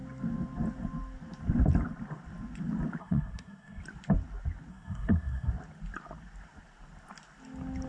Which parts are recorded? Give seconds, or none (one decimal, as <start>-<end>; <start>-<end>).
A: 0.0-3.0; 3.8-4.7; 5.5-7.9